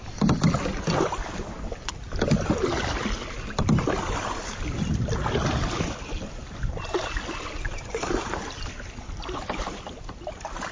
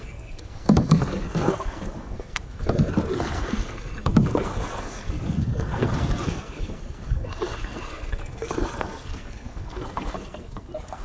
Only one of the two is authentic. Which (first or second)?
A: first